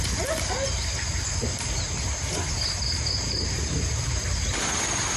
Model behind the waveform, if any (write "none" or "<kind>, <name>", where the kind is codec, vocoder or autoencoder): none